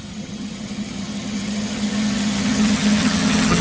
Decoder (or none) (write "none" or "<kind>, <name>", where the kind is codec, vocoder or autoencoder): vocoder, HiFi-GAN